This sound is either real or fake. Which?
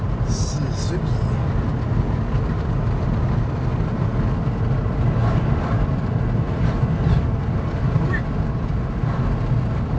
real